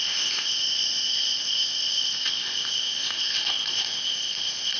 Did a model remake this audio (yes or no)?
yes